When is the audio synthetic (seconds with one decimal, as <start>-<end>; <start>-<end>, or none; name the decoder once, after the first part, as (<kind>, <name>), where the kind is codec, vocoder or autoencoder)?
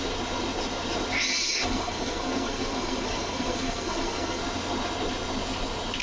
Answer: 1.6-4.4 (codec, SNAC)